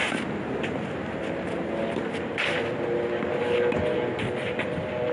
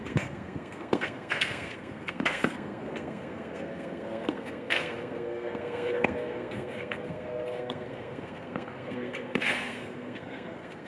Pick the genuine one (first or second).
first